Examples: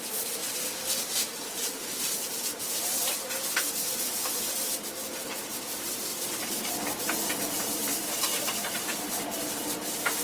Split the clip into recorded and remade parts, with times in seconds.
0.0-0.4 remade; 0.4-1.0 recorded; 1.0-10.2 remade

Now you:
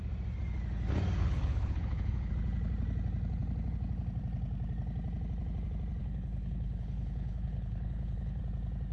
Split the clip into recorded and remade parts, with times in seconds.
0.0-1.2 recorded; 1.2-2.3 remade; 2.3-6.0 recorded; 6.0-8.4 remade; 8.4-8.9 recorded

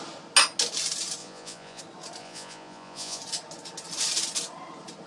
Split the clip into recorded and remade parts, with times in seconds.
0.0-1.2 recorded; 1.2-1.8 remade; 1.8-2.2 recorded; 2.2-3.2 remade; 3.2-5.1 recorded

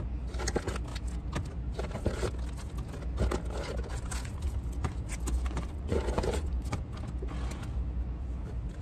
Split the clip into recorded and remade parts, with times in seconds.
0.0-3.9 recorded; 3.9-6.8 remade; 6.8-8.8 recorded

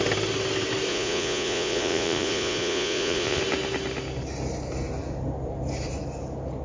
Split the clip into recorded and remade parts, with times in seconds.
0.0-0.9 recorded; 0.9-3.4 remade; 3.4-6.6 recorded

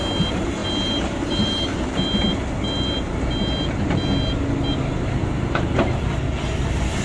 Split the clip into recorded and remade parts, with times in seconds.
0.0-7.0 recorded